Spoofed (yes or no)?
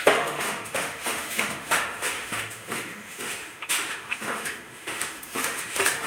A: yes